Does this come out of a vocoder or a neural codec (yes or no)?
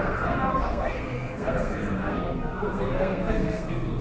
yes